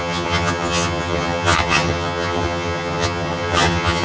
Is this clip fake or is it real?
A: fake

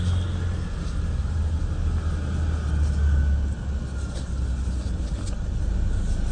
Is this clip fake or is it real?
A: real